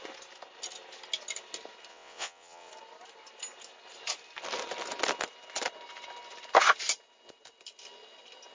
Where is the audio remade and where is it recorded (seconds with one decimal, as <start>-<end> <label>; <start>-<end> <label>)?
0.0-1.9 recorded; 1.9-2.7 remade; 2.7-8.5 recorded